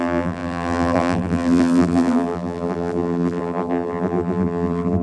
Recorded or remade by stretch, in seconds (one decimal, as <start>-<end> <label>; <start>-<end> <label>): 0.0-5.0 remade